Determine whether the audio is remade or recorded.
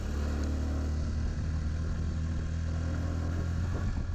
recorded